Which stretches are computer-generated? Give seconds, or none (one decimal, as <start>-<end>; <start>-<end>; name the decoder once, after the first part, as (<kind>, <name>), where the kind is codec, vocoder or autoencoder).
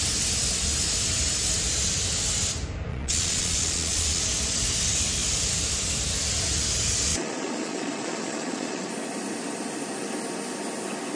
2.9-4.2 (vocoder, Vocos); 7.1-8.9